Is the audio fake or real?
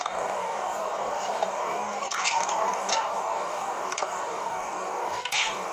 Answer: fake